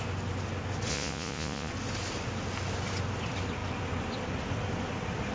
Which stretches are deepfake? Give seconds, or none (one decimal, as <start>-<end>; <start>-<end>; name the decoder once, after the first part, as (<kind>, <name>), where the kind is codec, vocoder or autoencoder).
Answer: 0.9-1.7 (vocoder, Vocos)